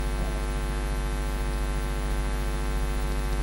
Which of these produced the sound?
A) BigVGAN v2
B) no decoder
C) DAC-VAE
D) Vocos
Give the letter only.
B